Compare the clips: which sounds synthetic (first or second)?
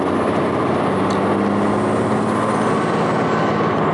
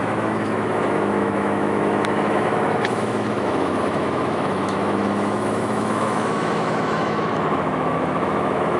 second